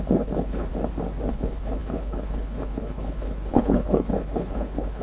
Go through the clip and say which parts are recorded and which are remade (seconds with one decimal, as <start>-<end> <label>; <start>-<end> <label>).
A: 0.0-0.7 remade; 0.7-1.3 recorded; 1.3-5.0 remade